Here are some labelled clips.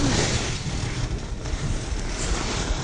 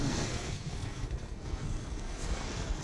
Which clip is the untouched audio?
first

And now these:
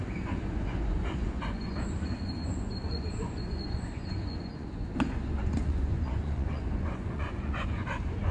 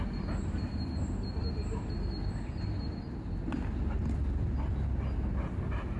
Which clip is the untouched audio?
second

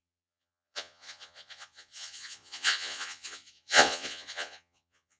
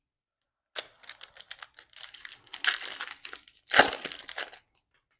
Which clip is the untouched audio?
second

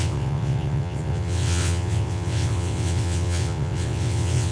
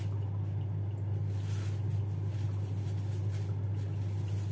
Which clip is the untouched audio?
second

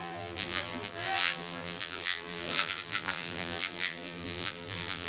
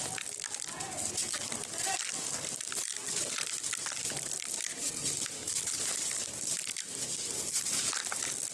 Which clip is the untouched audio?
second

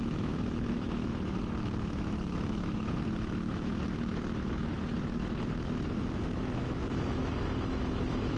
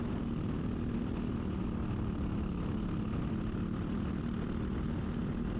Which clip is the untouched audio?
second